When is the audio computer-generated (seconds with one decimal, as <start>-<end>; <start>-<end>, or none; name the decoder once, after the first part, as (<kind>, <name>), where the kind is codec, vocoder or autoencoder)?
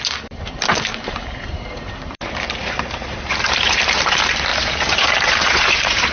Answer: 0.9-4.1 (vocoder, BigVGAN v2); 4.5-6.1